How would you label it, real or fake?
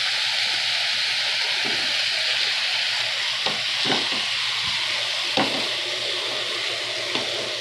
real